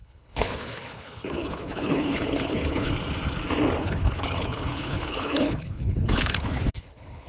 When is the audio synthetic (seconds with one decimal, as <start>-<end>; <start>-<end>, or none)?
0.0-2.9; 3.8-7.3